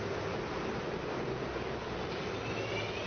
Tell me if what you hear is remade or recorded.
recorded